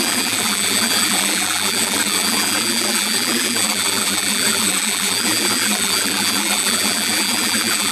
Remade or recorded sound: remade